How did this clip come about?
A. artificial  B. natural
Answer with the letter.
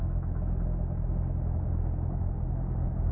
B